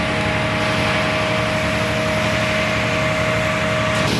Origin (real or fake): real